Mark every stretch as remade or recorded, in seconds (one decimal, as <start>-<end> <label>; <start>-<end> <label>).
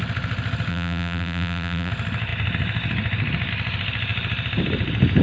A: 0.0-0.7 recorded; 0.7-1.9 remade; 1.9-5.2 recorded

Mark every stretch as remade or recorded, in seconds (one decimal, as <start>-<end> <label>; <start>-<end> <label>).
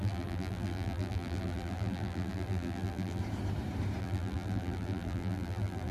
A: 0.0-3.2 remade; 3.2-4.0 recorded; 4.0-5.9 remade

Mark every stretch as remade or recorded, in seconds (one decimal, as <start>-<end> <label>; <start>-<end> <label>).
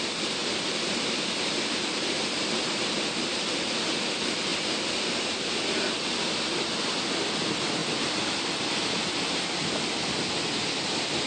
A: 0.0-0.4 recorded; 0.4-3.1 remade; 3.1-11.3 recorded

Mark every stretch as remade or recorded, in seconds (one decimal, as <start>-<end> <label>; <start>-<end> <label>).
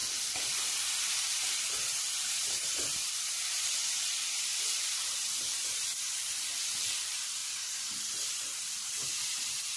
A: 0.0-1.0 recorded; 1.0-6.3 remade; 6.3-6.8 recorded; 6.8-9.8 remade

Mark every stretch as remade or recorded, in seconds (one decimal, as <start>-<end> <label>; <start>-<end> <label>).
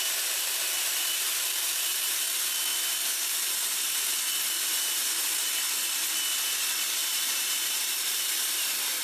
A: 0.0-7.0 recorded; 7.0-8.6 remade; 8.6-9.0 recorded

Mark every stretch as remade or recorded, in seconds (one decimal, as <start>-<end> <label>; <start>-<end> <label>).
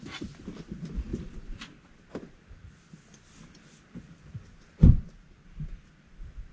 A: 0.0-1.1 recorded; 1.1-5.0 remade; 5.0-6.5 recorded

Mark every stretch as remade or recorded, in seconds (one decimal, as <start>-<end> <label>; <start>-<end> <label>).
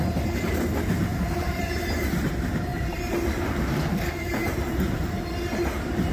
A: 0.0-1.1 recorded; 1.1-1.7 remade; 1.7-2.7 recorded; 2.7-5.1 remade; 5.1-6.1 recorded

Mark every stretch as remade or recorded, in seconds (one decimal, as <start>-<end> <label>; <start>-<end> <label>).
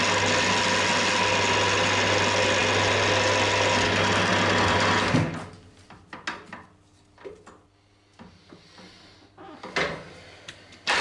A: 0.0-11.0 recorded